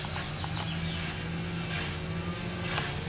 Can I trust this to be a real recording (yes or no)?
yes